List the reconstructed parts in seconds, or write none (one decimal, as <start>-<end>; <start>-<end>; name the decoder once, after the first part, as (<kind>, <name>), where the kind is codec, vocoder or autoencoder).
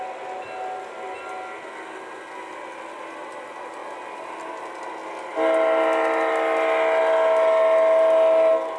none